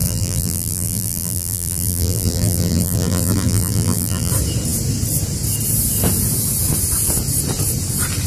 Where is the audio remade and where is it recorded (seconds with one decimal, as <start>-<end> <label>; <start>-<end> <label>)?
0.0-4.3 remade; 4.3-8.3 recorded